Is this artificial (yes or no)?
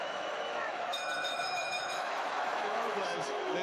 yes